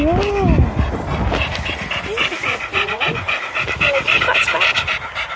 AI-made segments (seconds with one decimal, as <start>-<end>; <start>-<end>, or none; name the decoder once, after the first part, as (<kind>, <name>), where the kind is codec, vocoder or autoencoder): 2.5-3.4 (vocoder, Vocos)